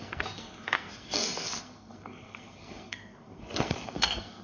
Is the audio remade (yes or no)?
yes